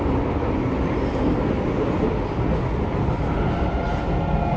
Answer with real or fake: real